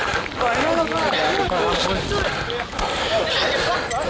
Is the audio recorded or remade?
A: recorded